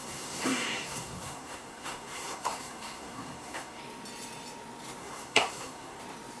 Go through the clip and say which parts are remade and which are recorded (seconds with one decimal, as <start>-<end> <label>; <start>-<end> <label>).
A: 0.0-3.8 remade; 3.8-5.0 recorded; 5.0-6.0 remade; 6.0-6.4 recorded